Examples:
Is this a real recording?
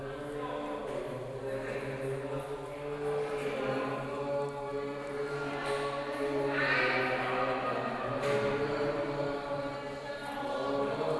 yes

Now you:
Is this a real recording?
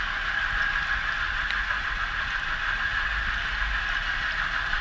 yes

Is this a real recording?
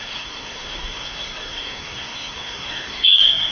no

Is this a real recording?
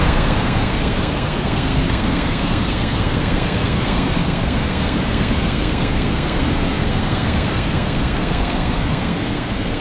no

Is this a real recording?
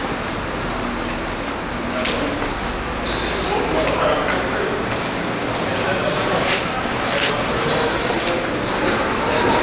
yes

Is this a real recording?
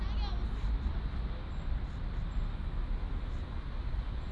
yes